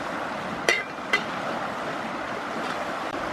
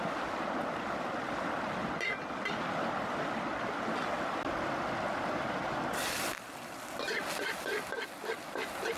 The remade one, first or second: first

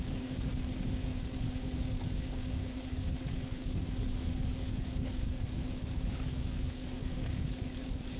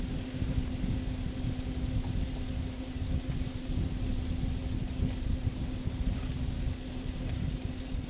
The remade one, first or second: first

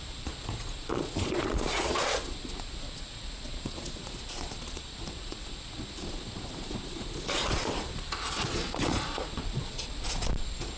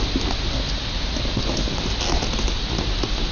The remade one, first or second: first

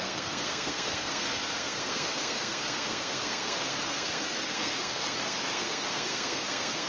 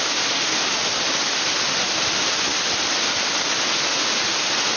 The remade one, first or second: first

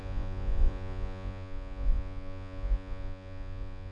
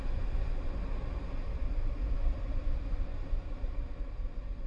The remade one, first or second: first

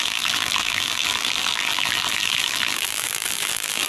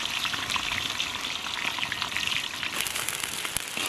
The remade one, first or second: first